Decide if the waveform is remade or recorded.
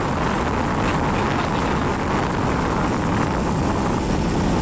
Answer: recorded